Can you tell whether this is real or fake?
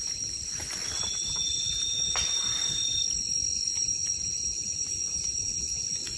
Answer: real